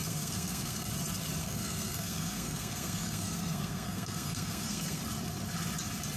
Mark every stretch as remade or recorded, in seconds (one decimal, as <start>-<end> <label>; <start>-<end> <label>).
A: 0.0-0.9 remade; 0.9-1.4 recorded; 1.4-5.0 remade; 5.0-6.2 recorded